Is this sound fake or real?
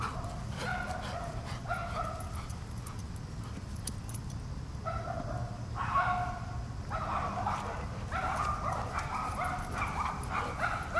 real